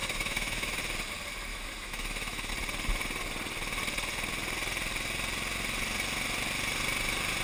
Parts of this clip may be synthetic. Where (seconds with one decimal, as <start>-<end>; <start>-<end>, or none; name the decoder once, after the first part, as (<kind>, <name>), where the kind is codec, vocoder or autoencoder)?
0.0-0.8 (autoencoder, DAC-VAE); 1.5-2.5